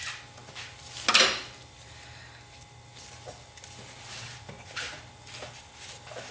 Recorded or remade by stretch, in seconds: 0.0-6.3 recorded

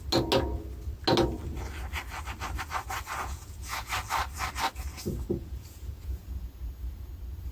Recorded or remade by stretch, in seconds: 0.0-3.2 recorded; 3.2-3.9 remade; 3.9-4.9 recorded; 4.9-7.1 remade; 7.1-7.5 recorded

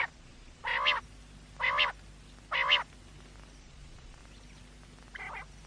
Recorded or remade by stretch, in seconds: 0.0-0.7 remade; 0.7-3.6 recorded; 3.6-4.2 remade; 4.2-5.7 recorded

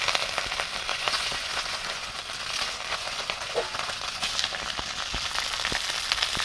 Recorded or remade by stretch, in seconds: 0.0-0.9 recorded; 0.9-2.2 remade; 2.2-2.9 recorded; 2.9-4.3 remade; 4.3-6.4 recorded

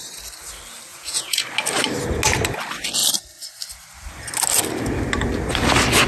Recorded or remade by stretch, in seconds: 0.0-0.9 recorded; 0.9-1.4 remade; 1.4-6.1 recorded

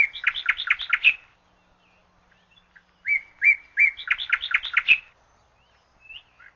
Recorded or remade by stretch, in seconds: 0.0-6.6 recorded

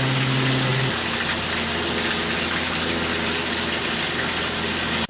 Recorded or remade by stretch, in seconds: 0.0-5.1 recorded